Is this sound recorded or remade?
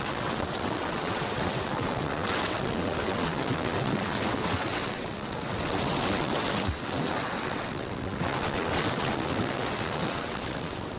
remade